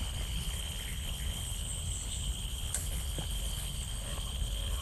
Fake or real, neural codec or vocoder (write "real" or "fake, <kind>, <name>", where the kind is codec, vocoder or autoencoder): fake, codec, HILCodec